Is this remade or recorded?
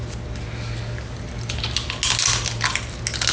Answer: recorded